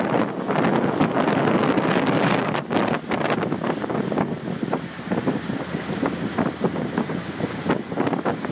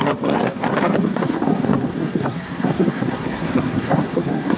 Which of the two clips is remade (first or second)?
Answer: second